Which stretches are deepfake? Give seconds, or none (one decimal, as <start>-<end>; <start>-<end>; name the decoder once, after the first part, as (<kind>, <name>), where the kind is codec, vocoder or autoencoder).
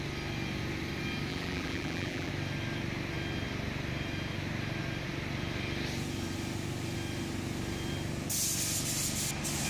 1.3-2.3 (vocoder, BigVGAN v2)